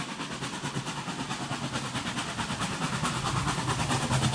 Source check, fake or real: real